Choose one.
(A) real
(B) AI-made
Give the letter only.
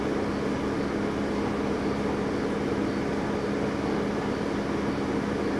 A